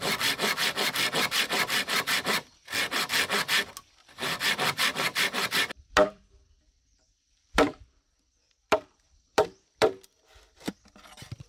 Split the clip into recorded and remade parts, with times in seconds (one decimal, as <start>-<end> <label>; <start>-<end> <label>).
0.0-3.1 remade; 3.1-4.0 recorded; 4.0-11.5 remade